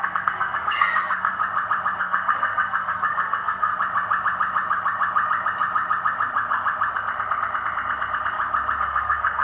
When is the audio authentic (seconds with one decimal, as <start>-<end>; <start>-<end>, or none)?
1.4-2.0; 3.7-8.8